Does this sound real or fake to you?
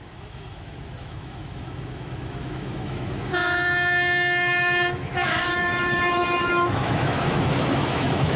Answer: fake